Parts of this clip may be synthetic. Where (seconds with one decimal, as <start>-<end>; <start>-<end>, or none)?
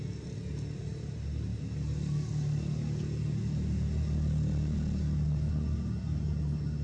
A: none